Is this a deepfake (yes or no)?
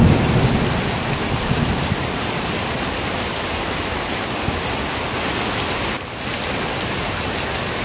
no